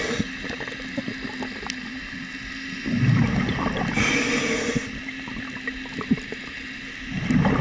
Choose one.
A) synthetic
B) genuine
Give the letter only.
B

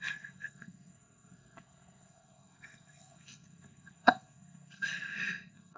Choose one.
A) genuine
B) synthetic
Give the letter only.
B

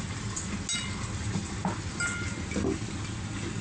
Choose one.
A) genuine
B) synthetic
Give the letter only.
A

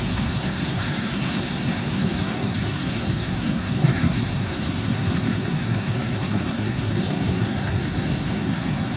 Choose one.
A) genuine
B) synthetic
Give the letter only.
B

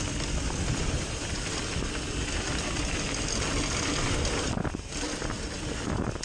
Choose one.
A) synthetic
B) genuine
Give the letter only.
B